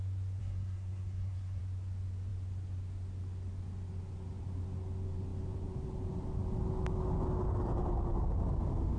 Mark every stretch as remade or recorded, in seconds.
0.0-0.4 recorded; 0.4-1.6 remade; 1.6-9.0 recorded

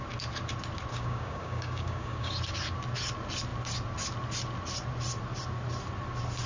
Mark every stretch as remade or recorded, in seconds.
0.0-0.9 recorded; 0.9-2.3 remade; 2.3-6.5 recorded

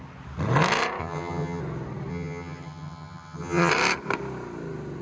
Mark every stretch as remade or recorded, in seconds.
0.0-1.0 recorded; 1.0-1.6 remade; 1.6-2.1 recorded; 2.1-3.7 remade; 3.7-5.0 recorded

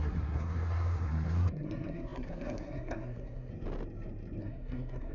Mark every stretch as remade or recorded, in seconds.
0.0-3.5 remade; 3.5-4.4 recorded; 4.4-5.1 remade

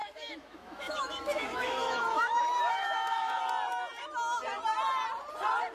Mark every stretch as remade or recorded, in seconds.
0.0-3.4 remade; 3.4-5.7 recorded

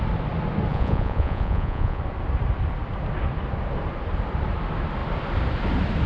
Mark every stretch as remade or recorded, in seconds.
0.0-0.7 recorded; 0.7-2.0 remade; 2.0-6.1 recorded

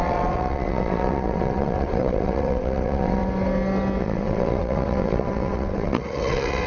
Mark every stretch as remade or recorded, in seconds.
0.0-3.2 remade; 3.2-4.0 recorded; 4.0-6.7 remade